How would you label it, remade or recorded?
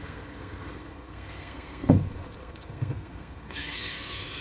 remade